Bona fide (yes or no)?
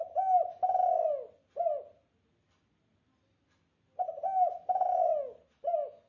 yes